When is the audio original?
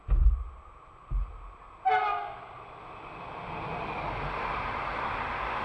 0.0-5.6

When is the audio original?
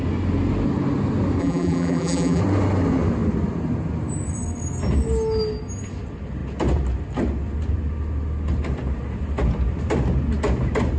0.0-1.4; 2.4-11.0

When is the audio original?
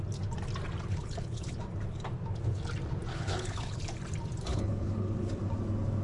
0.0-0.9; 1.6-3.1; 3.8-4.5; 5.4-6.0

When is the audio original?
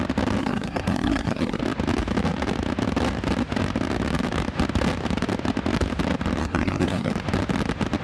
0.0-0.4; 1.6-6.4; 7.1-8.0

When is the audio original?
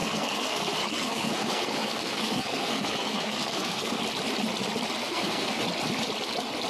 4.0-5.0; 5.6-6.7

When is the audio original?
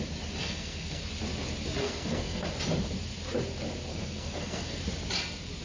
0.0-0.4; 1.0-1.8; 2.5-3.9; 4.8-5.6